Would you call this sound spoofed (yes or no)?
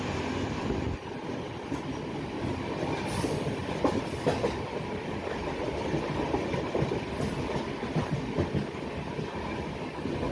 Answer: no